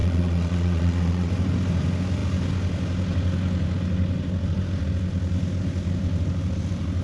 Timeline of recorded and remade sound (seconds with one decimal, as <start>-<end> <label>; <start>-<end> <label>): 0.0-1.3 remade; 1.3-7.0 recorded